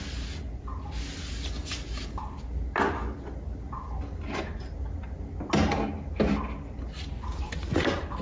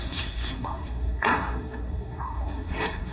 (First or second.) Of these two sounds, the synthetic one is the second